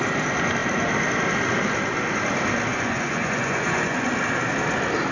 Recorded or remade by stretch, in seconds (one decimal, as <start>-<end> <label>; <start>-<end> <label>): 0.0-2.7 recorded; 2.7-4.1 remade; 4.1-5.1 recorded